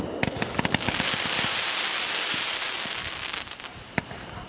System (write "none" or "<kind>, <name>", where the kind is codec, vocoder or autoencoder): none